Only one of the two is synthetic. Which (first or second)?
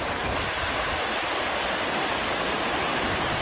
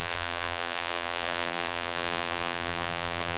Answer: second